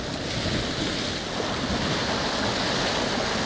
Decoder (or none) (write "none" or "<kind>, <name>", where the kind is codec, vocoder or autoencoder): none